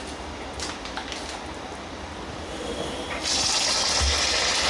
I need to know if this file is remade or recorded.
recorded